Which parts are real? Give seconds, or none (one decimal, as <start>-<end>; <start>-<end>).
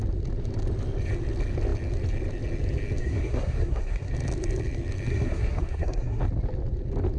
0.0-3.0; 4.1-5.1; 6.2-7.2